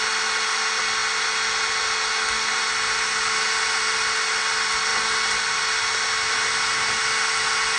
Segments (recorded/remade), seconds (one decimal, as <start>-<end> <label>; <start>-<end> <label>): 0.0-7.8 recorded